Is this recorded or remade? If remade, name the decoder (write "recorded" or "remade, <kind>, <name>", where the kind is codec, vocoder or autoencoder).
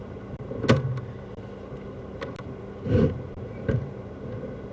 recorded